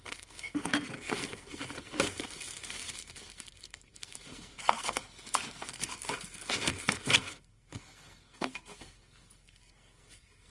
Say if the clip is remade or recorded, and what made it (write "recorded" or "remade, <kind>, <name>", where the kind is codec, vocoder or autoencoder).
remade, codec, SNAC